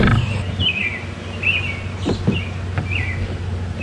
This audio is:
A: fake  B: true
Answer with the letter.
B